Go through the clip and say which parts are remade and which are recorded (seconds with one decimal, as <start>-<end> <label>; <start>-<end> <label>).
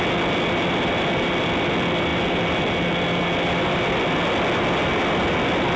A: 0.0-5.8 recorded